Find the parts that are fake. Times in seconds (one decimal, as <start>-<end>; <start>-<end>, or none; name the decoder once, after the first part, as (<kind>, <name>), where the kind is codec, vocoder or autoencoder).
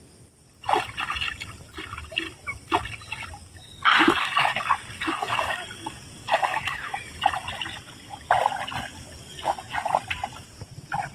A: 3.4-7.0 (codec, DAC)